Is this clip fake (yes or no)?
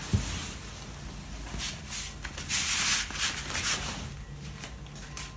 no